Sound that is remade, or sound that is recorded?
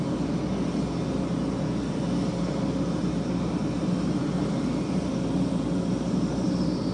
recorded